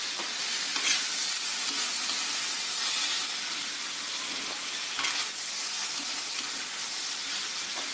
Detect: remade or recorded recorded